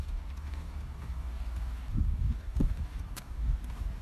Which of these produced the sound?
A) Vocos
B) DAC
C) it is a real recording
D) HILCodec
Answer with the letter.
B